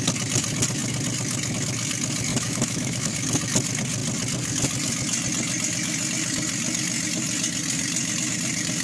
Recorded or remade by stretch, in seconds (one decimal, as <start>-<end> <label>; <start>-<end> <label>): 0.0-2.3 recorded; 2.3-3.1 remade; 3.1-8.8 recorded